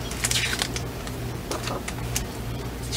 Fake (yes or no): yes